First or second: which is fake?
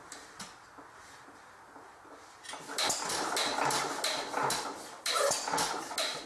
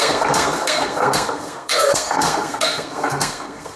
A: second